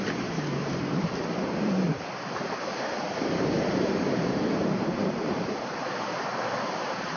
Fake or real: fake